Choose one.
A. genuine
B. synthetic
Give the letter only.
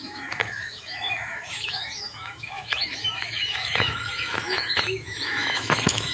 B